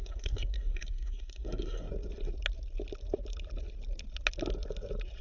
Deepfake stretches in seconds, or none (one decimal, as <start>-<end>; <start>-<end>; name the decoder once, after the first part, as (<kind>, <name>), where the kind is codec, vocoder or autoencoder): 0.0-1.9 (codec, SNAC)